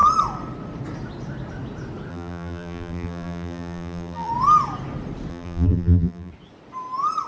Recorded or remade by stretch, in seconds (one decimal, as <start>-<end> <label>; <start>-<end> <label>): 0.0-2.1 recorded; 2.1-4.3 remade; 4.3-5.3 recorded; 5.3-6.3 remade; 6.3-7.3 recorded